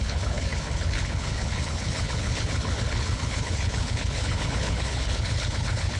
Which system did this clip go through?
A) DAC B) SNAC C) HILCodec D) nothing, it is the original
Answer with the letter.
C